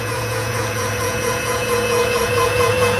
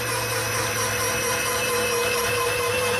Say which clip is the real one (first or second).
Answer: second